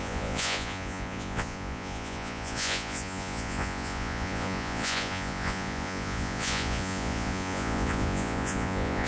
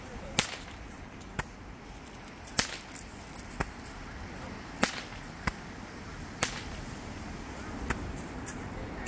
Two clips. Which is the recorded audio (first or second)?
second